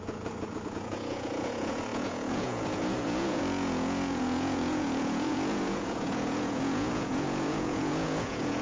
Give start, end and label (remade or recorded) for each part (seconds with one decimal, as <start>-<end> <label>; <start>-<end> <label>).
0.0-8.6 remade